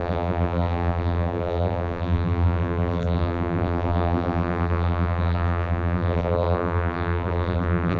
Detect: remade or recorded remade